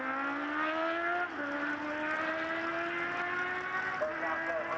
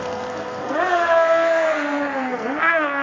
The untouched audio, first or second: first